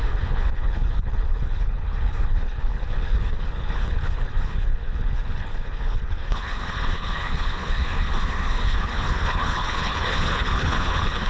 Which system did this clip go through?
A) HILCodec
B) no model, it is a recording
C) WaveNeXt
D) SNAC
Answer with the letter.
A